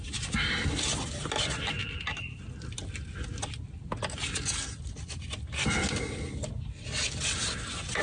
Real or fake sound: real